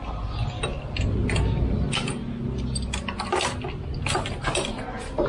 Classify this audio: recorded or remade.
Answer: recorded